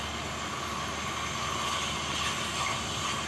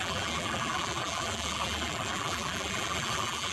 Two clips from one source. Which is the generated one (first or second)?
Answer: second